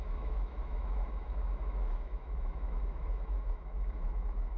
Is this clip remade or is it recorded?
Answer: remade